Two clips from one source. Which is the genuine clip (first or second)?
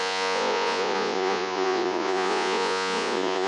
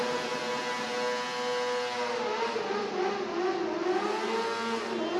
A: second